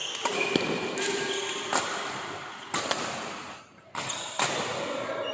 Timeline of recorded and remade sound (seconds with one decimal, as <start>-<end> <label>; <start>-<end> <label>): 0.0-5.3 recorded